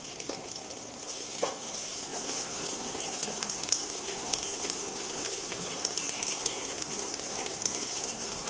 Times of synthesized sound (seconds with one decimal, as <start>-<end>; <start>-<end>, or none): 0.0-8.5